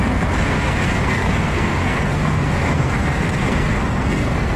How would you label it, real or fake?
fake